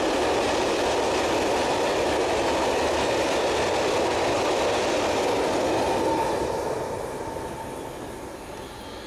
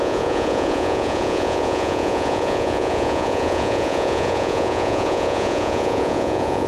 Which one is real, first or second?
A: first